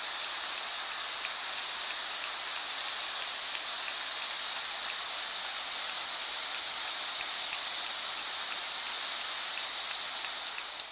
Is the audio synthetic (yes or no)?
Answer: no